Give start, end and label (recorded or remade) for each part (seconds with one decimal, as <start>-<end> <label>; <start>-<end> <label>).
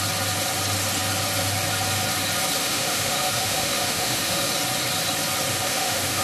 0.0-2.6 recorded; 2.6-4.5 remade; 4.5-5.5 recorded; 5.5-6.2 remade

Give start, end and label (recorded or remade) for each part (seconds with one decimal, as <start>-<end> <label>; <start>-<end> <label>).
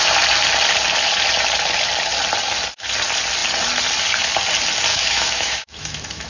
0.0-4.9 recorded; 4.9-6.3 remade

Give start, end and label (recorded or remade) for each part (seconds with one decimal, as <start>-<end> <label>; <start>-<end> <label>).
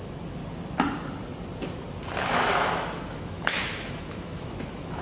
0.0-0.4 remade; 0.4-2.3 recorded; 2.3-5.0 remade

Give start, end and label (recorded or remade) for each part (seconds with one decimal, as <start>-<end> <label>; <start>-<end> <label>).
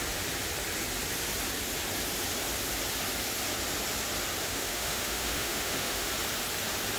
0.0-4.4 recorded; 4.4-6.1 remade; 6.1-7.0 recorded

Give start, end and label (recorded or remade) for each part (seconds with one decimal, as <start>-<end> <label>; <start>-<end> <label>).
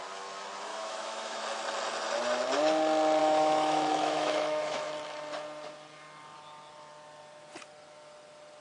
0.0-0.7 recorded; 0.7-1.4 remade; 1.4-3.2 recorded; 3.2-4.9 remade; 4.9-8.6 recorded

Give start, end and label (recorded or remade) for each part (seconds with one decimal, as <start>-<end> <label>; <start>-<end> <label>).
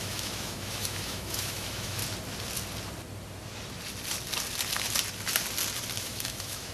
0.0-2.0 remade; 2.0-6.0 recorded; 6.0-6.7 remade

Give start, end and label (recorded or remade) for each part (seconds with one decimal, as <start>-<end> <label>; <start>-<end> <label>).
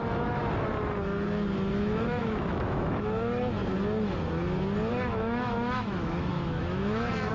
0.0-0.4 remade; 0.4-1.7 recorded; 1.7-3.6 remade; 3.6-4.9 recorded; 4.9-7.3 remade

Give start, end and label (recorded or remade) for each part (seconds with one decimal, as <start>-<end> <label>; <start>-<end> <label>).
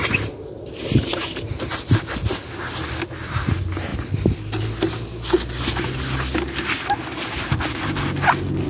0.0-8.7 recorded